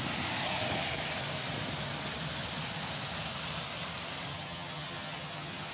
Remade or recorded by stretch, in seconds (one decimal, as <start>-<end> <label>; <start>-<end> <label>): 0.0-4.3 recorded; 4.3-5.7 remade